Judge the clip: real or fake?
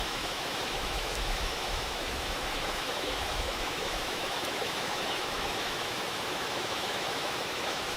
fake